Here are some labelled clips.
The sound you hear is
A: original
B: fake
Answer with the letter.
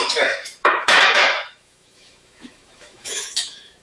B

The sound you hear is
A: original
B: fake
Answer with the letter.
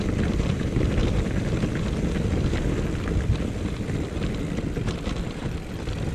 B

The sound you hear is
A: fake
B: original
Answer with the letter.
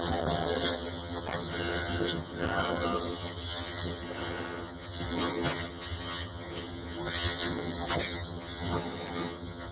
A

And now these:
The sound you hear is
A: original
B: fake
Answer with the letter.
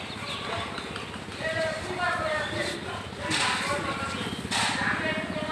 A